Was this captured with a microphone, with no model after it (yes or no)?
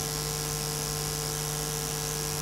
yes